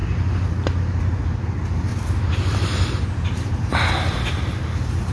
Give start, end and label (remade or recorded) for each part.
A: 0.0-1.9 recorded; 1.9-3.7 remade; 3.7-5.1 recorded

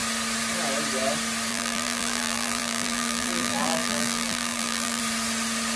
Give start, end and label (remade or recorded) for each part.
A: 0.0-1.5 recorded; 1.5-5.0 remade; 5.0-5.8 recorded

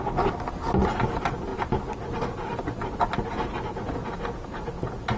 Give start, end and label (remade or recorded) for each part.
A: 0.0-5.2 recorded

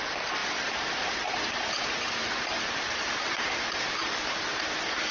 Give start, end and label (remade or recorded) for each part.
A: 0.0-2.2 recorded; 2.2-3.9 remade; 3.9-5.1 recorded

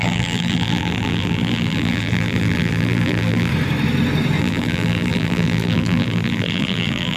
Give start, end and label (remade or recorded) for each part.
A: 0.0-3.5 remade; 3.5-4.4 recorded; 4.4-7.2 remade

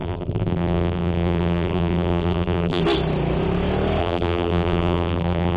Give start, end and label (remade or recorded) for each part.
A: 0.0-2.8 remade; 2.8-4.0 recorded; 4.0-5.6 remade

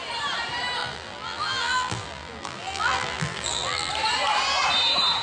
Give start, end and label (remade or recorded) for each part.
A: 0.0-0.8 recorded; 0.8-3.9 remade; 3.9-5.2 recorded

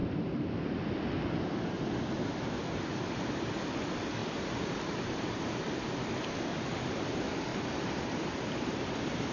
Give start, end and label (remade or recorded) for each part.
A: 0.0-0.8 remade; 0.8-2.6 recorded; 2.6-3.3 remade; 3.3-4.2 recorded; 4.2-5.3 remade; 5.3-7.5 recorded; 7.5-8.1 remade; 8.1-9.3 recorded